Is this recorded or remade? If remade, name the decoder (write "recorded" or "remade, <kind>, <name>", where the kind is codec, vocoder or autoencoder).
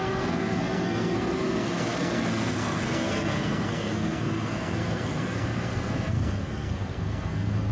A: remade, codec, SNAC